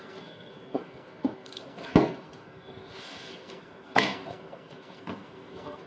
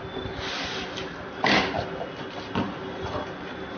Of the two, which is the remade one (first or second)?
first